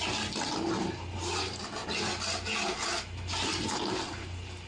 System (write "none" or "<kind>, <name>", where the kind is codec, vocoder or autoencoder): none